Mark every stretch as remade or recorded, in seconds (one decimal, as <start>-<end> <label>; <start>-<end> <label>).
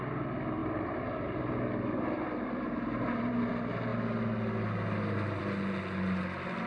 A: 0.0-0.6 recorded; 0.6-3.5 remade; 3.5-6.7 recorded